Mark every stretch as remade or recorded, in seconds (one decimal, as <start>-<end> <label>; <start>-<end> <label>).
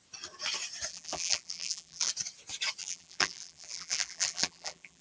0.0-0.9 recorded; 0.9-2.1 remade; 2.1-2.8 recorded; 2.8-5.0 remade